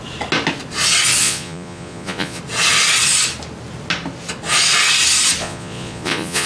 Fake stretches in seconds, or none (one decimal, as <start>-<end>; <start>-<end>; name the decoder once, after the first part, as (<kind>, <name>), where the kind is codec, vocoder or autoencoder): 1.2-2.4 (vocoder, Vocos); 5.4-6.5